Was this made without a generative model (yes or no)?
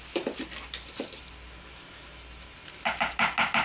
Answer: yes